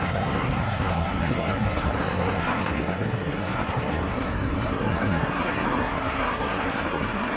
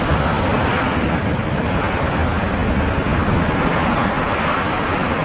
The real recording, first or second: second